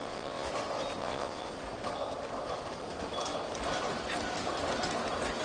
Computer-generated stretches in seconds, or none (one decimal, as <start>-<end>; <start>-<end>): 0.0-0.5; 1.0-1.5